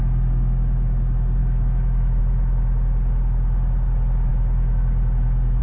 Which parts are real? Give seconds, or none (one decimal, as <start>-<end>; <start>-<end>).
0.0-1.4; 2.2-5.6